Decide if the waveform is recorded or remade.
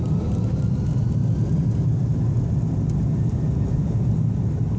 recorded